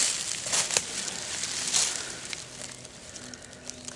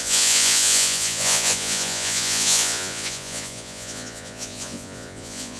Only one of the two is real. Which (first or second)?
first